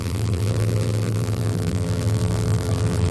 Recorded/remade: remade